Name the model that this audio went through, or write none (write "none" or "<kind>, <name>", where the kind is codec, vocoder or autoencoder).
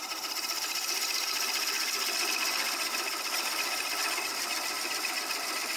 none